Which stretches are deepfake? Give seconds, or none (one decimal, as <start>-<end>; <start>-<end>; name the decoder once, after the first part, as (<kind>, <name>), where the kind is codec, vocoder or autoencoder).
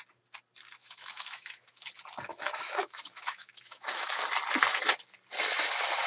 0.8-1.9 (autoencoder, DAC-VAE); 2.3-4.2